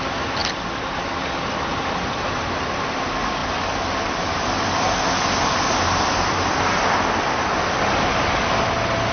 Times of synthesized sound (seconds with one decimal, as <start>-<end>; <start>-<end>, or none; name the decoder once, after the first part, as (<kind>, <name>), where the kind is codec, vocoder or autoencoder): none